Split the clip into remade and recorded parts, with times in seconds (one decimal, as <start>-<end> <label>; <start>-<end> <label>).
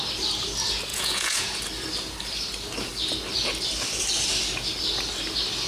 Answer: 0.0-0.9 recorded; 0.9-1.6 remade; 1.6-5.7 recorded